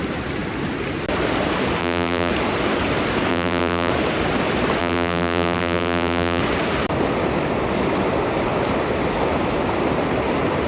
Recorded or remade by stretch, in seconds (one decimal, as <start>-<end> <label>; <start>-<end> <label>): 0.0-1.8 recorded; 1.8-2.3 remade; 2.3-3.3 recorded; 3.3-3.9 remade; 3.9-4.8 recorded; 4.8-6.4 remade; 6.4-10.7 recorded